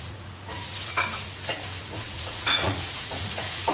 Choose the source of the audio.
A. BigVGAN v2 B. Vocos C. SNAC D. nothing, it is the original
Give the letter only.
B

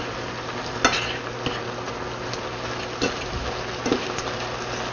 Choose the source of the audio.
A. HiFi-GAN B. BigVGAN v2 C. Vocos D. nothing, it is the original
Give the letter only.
D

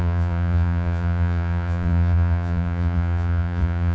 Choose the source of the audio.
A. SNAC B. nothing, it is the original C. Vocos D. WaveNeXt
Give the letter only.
C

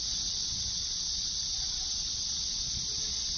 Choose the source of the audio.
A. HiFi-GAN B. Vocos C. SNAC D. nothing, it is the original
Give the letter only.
B